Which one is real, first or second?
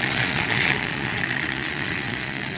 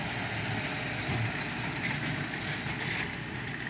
second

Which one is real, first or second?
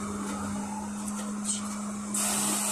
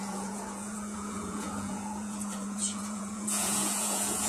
first